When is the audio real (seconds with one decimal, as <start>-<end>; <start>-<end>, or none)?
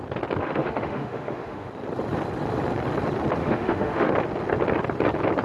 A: 0.0-0.4; 1.7-3.4; 4.1-5.4